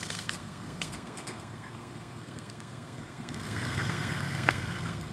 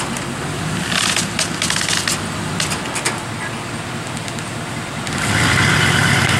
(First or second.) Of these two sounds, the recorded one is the second